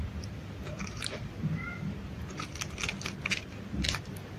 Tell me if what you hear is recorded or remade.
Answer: recorded